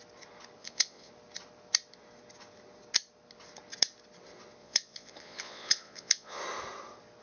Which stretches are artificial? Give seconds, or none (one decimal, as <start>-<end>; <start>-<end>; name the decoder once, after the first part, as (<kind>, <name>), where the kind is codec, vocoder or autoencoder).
0.6-1.1 (vocoder, Vocos); 4.6-6.4